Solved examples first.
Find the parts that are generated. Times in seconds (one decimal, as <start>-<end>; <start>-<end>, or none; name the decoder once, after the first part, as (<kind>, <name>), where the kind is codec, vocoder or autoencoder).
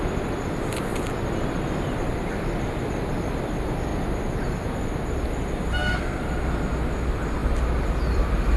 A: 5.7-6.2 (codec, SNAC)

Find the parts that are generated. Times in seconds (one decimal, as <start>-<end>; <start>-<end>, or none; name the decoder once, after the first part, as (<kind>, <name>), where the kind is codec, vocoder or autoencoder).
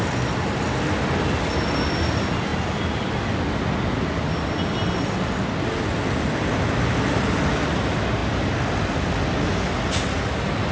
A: none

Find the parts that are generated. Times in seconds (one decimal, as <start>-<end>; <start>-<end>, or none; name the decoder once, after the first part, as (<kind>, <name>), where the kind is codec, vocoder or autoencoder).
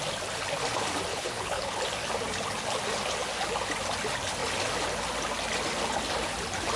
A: 1.1-1.8 (codec, HILCodec)